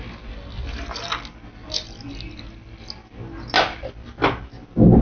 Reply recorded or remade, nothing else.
recorded